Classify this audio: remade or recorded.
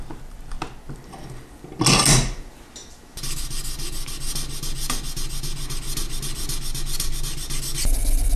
recorded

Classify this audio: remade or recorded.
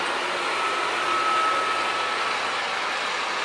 recorded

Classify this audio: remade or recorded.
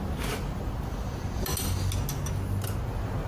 recorded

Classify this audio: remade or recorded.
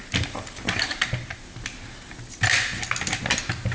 recorded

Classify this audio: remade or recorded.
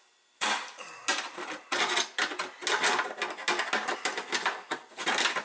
recorded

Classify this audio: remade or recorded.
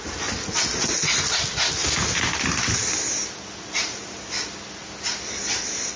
recorded